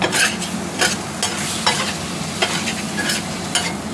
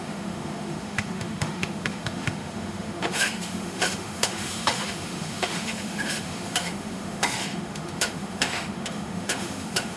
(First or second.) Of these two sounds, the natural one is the first